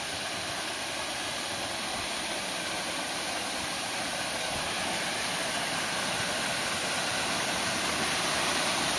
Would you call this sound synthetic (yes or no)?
no